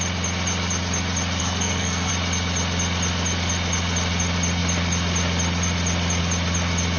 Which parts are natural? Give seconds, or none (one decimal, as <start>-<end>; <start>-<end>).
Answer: 0.0-1.4; 2.1-7.0